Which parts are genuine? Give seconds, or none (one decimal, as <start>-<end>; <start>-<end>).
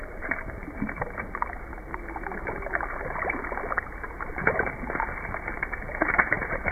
0.6-1.5; 1.9-5.9